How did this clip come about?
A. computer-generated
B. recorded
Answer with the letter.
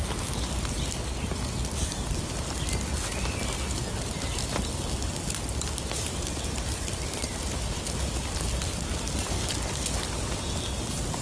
B